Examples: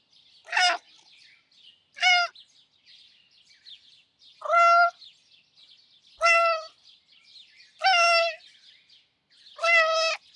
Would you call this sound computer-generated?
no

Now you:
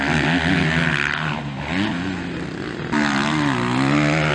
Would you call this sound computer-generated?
no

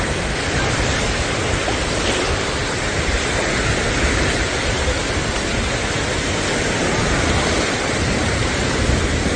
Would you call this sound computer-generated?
no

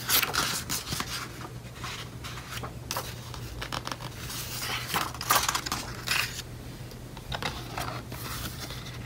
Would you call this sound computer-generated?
no